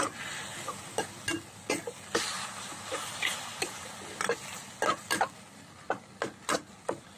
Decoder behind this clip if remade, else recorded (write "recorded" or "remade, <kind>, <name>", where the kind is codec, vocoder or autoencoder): recorded